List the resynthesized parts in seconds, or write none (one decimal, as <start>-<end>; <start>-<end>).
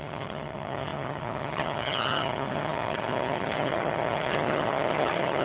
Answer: 0.0-5.4